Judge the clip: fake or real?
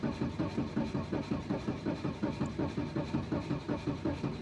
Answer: fake